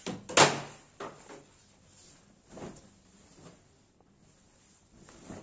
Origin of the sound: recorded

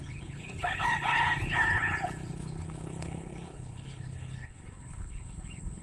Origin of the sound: remade